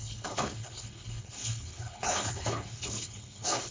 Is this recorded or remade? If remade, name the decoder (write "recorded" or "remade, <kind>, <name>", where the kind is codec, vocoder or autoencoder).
remade, codec, HILCodec